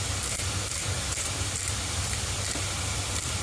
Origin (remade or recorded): remade